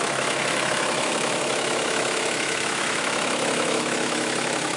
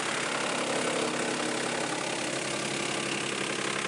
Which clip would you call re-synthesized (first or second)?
first